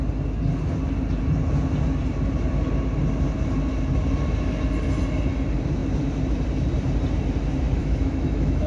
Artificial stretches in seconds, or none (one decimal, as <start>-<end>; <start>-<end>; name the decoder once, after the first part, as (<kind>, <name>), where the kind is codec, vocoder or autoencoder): 7.8-8.7 (autoencoder, DAC-VAE)